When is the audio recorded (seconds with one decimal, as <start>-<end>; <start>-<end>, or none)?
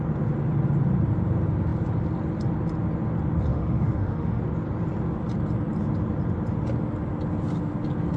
0.0-3.5; 4.4-8.2